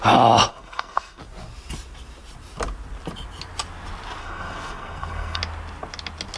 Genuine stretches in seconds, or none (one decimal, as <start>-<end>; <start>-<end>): 0.0-0.5; 1.2-4.2; 5.4-6.4